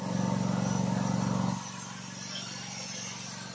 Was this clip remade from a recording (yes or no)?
no